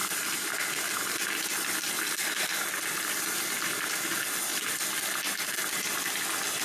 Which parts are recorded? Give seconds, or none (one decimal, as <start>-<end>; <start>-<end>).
0.0-6.6